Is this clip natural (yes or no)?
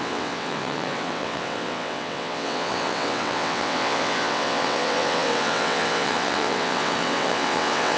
no